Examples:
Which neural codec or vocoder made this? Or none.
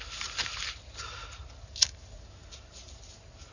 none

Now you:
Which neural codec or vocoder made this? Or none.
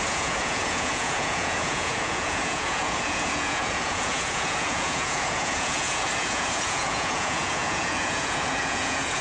vocoder, Vocos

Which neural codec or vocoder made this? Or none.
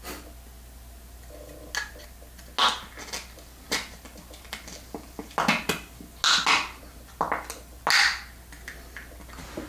none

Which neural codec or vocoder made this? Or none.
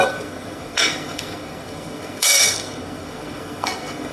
codec, SNAC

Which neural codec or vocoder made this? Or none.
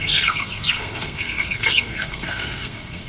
codec, SNAC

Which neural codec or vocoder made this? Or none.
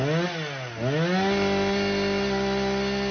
none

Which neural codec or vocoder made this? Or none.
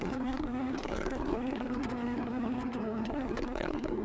codec, SNAC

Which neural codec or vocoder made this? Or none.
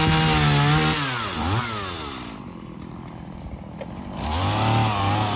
none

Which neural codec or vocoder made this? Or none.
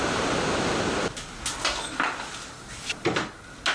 none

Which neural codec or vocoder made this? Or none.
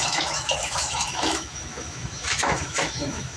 autoencoder, DAC-VAE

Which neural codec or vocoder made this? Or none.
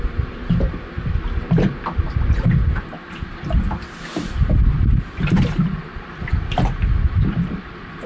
vocoder, BigVGAN v2